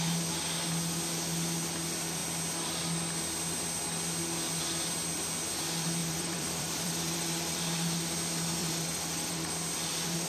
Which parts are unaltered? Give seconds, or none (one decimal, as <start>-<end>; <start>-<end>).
0.0-6.0; 7.6-8.6; 9.5-10.3

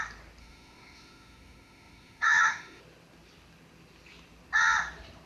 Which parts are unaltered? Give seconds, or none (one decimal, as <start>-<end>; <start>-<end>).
0.0-0.4; 2.8-5.3